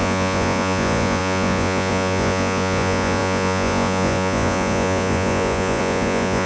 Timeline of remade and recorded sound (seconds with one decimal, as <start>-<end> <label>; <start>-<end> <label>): 0.0-6.5 remade